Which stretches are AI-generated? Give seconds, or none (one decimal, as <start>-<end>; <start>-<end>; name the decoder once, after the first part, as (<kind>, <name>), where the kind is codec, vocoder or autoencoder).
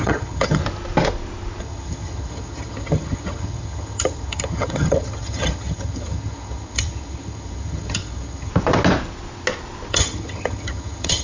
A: 0.0-0.6 (vocoder, HiFi-GAN); 1.6-8.5; 9.9-11.2